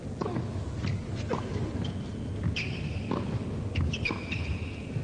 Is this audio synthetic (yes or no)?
no